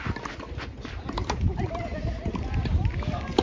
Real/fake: real